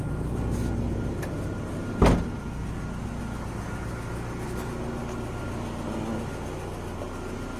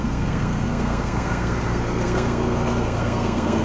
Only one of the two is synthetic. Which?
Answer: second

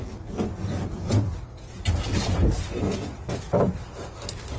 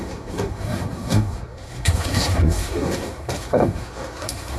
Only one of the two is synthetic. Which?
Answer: second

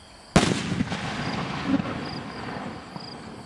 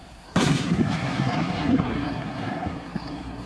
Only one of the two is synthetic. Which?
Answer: second